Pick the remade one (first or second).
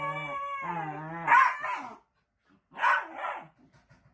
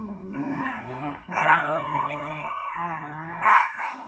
second